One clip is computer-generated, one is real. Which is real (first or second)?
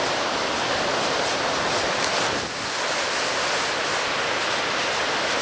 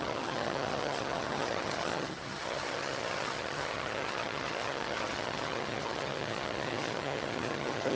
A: first